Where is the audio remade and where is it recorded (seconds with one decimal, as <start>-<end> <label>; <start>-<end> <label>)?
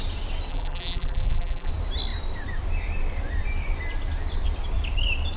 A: 0.0-0.5 recorded; 0.5-1.7 remade; 1.7-5.4 recorded